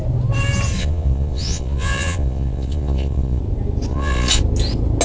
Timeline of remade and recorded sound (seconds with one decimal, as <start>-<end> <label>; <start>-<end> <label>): 0.0-0.8 recorded; 0.8-3.4 remade; 3.4-3.9 recorded; 3.9-4.4 remade; 4.4-5.0 recorded